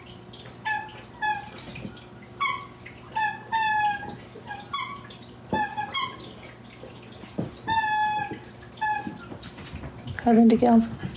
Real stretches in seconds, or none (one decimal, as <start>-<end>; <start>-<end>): 0.0-11.2